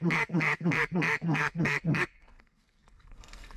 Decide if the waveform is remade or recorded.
remade